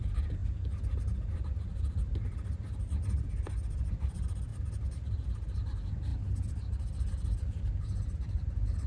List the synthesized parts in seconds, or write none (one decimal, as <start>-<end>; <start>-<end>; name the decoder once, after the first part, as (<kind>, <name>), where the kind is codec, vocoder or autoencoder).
0.0-0.4 (vocoder, BigVGAN v2); 1.0-4.5; 5.3-6.1; 7.1-8.9